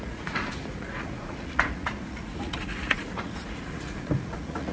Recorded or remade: remade